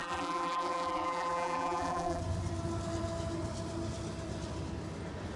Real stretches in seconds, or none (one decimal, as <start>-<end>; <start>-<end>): 2.2-5.4